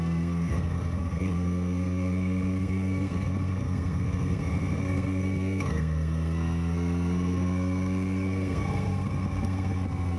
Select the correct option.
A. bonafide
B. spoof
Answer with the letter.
B